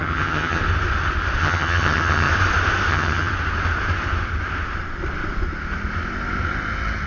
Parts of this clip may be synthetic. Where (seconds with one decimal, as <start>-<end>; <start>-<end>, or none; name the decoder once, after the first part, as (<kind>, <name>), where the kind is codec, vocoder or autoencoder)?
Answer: 0.0-0.6 (vocoder, HiFi-GAN); 1.4-2.3; 2.9-3.3